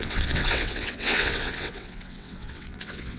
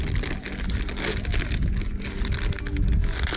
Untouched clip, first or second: second